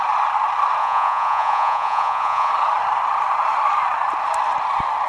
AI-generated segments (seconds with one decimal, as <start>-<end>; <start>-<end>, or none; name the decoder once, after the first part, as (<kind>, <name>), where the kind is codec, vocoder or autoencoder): 0.8-2.5 (vocoder, Vocos)